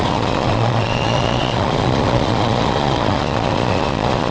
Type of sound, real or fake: fake